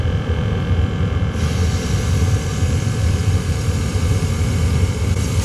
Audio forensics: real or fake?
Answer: fake